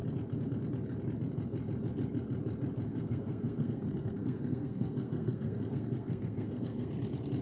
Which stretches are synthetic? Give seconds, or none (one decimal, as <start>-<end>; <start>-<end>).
2.9-6.9